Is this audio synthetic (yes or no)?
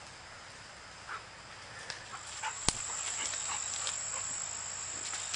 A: no